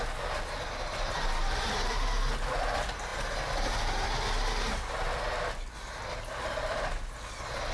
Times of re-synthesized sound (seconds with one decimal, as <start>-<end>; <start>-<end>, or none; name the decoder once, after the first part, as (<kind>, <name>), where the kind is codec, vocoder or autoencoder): none